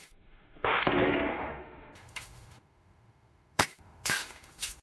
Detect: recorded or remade remade